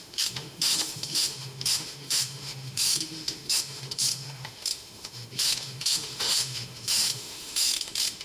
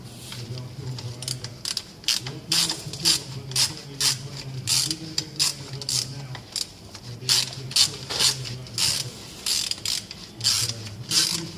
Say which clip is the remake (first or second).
first